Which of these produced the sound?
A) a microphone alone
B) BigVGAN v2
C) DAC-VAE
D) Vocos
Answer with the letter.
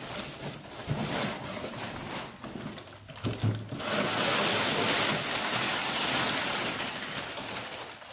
A